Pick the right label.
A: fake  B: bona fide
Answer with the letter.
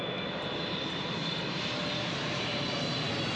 B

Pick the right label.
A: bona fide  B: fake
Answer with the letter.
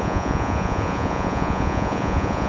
B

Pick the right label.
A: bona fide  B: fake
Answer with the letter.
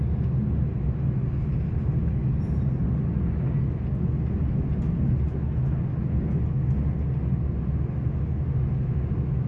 A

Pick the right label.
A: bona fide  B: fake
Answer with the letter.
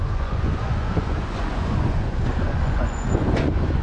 B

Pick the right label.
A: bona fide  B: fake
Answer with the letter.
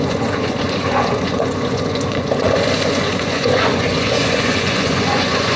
B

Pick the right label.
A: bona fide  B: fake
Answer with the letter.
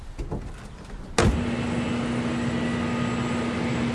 A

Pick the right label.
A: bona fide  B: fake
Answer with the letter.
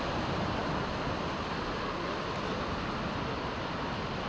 A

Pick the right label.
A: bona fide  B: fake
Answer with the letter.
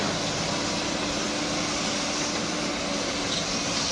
A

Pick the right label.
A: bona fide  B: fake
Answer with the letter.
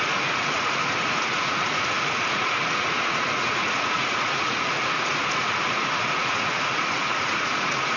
B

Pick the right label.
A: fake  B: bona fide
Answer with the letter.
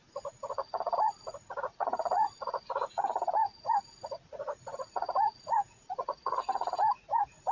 A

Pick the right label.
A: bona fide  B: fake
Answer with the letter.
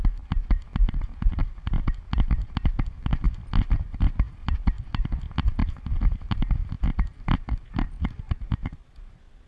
A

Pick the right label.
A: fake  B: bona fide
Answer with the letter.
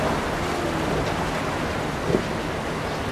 B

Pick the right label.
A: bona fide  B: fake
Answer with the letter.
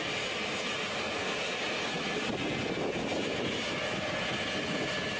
A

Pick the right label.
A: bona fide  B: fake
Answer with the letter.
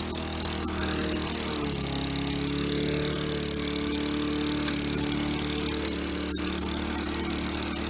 A